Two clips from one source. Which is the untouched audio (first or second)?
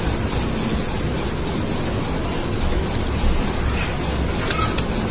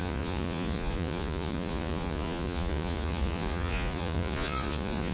first